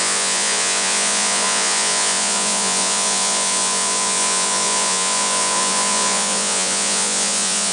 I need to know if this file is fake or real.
fake